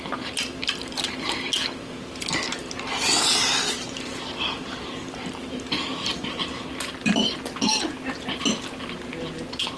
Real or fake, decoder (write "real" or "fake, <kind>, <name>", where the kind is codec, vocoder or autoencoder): real